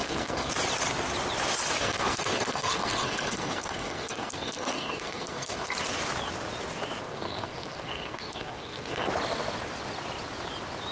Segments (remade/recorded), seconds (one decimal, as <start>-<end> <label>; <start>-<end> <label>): 0.0-0.5 remade; 0.5-1.8 recorded; 1.8-5.7 remade; 5.7-7.0 recorded; 7.0-9.1 remade; 9.1-10.9 recorded